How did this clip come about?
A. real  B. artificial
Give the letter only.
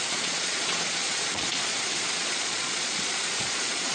B